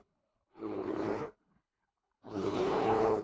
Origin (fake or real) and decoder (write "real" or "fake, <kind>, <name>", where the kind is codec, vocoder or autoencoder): fake, codec, HILCodec